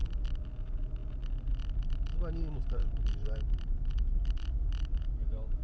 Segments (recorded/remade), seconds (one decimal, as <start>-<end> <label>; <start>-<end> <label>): 0.0-2.8 recorded; 2.8-5.6 remade